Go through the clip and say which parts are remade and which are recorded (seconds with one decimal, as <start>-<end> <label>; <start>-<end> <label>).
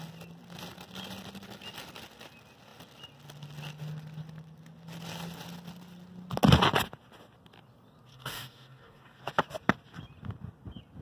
0.0-8.1 recorded; 8.1-9.2 remade; 9.2-11.0 recorded